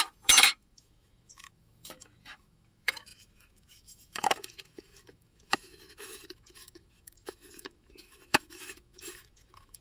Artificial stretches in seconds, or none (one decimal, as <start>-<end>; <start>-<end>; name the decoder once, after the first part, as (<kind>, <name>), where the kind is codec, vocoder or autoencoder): 0.0-9.8 (autoencoder, DAC-VAE)